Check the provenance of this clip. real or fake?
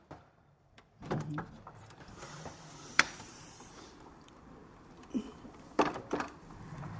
fake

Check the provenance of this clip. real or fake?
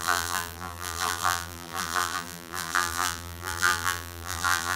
fake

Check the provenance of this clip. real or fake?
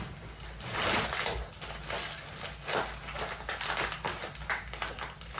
real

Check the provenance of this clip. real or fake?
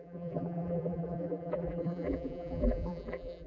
fake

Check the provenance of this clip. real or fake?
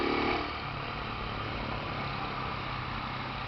fake